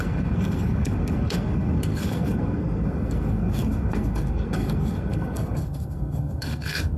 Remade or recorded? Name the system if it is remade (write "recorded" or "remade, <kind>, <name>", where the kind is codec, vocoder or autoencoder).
remade, codec, SNAC